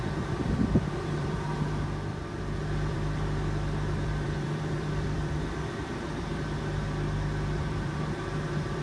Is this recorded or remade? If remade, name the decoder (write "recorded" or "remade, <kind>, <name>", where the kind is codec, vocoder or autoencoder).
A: remade, vocoder, BigVGAN v2